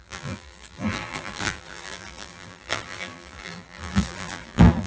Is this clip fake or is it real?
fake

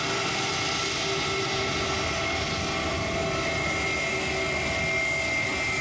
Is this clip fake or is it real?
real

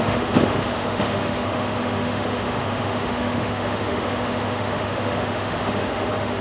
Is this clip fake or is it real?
fake